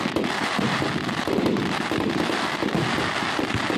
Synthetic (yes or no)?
no